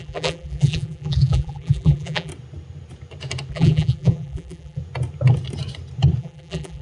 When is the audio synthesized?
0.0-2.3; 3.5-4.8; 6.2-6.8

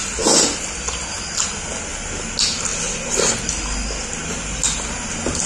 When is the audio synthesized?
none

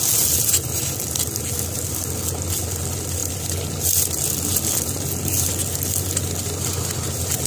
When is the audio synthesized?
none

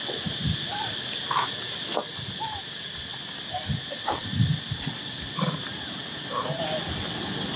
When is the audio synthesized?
none

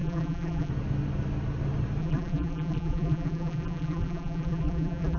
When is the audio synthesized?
0.0-0.7; 2.0-5.2